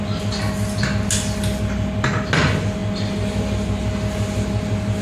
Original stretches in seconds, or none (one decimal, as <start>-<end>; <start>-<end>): 0.0-5.0